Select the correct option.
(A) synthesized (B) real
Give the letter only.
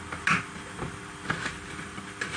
B